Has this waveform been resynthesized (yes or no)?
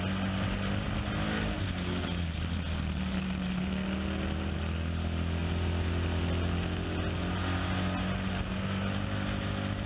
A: no